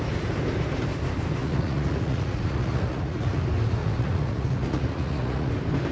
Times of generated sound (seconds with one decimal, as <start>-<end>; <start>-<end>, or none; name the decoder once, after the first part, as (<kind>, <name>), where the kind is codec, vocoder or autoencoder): 1.4-3.4 (vocoder, Vocos); 3.8-5.5